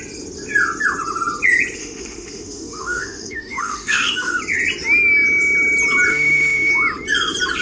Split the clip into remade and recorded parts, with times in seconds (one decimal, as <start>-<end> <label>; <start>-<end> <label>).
0.0-1.8 recorded; 1.8-4.4 remade; 4.4-6.1 recorded; 6.1-6.7 remade; 6.7-7.6 recorded